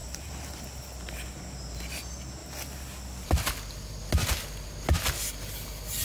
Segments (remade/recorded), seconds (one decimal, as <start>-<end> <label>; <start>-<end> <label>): 0.0-0.6 remade; 0.6-6.0 recorded